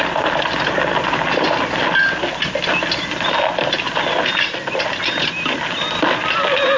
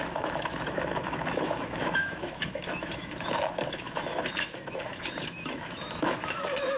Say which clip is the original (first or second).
first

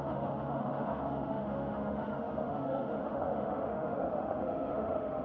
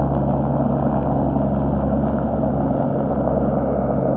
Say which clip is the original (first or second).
second